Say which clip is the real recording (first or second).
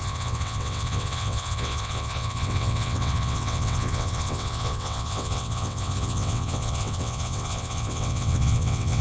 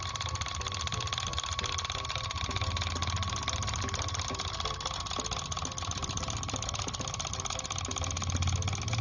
second